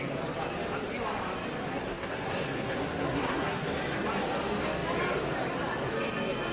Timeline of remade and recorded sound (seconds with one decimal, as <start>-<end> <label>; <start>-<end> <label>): 0.0-1.7 recorded; 1.7-3.7 remade; 3.7-6.5 recorded